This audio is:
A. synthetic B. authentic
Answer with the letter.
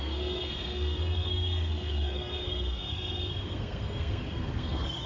A